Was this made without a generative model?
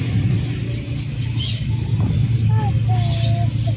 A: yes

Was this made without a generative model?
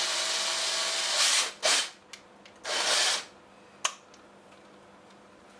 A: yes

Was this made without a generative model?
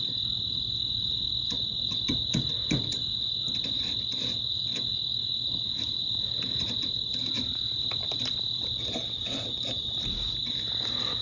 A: yes